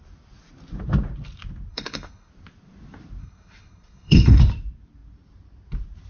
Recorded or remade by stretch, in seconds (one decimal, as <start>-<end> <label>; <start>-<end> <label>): 0.0-1.7 recorded; 1.7-2.3 remade; 2.3-3.2 recorded; 3.2-4.4 remade; 4.4-6.1 recorded

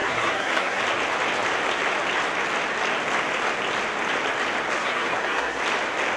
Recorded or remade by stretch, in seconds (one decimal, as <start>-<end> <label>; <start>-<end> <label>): 0.0-0.8 remade; 0.8-4.8 recorded; 4.8-5.6 remade; 5.6-6.2 recorded

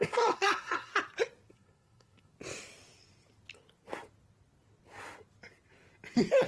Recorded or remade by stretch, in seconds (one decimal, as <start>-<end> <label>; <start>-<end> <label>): 0.0-0.9 remade; 0.9-1.5 recorded; 1.5-2.3 remade; 2.3-6.5 recorded

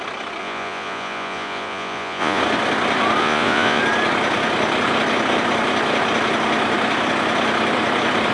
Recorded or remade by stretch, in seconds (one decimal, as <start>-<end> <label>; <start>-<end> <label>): 0.0-0.4 recorded; 0.4-2.4 remade; 2.4-3.2 recorded; 3.2-3.8 remade; 3.8-8.3 recorded

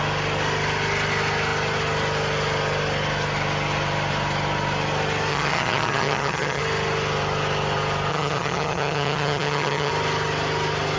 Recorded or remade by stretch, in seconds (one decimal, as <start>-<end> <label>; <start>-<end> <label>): 0.0-5.3 recorded; 5.3-6.6 remade; 6.6-8.1 recorded; 8.1-9.9 remade; 9.9-11.0 recorded